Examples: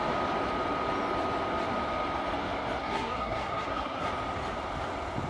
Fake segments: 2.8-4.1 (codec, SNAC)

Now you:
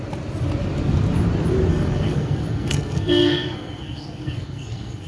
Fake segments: 1.7-5.1 (codec, SNAC)

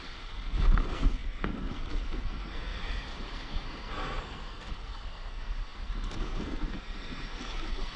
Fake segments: 0.0-8.0 (codec, SNAC)

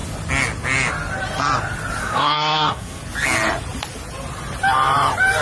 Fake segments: 2.0-3.0 (codec, SNAC)

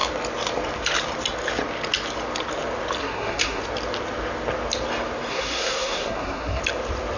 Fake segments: 3.0-3.6 (codec, SNAC); 5.3-6.6